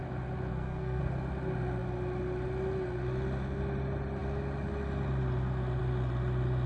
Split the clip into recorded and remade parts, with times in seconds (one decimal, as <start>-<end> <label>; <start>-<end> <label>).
0.0-0.5 recorded; 0.5-1.0 remade; 1.0-6.7 recorded